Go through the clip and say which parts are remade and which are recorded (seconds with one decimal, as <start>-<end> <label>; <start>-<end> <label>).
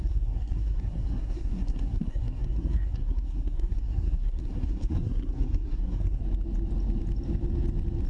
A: 0.0-6.2 remade; 6.2-8.1 recorded